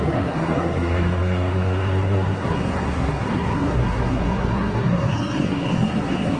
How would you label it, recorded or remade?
remade